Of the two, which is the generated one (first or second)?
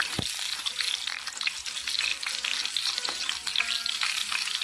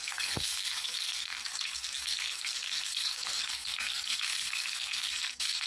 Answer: second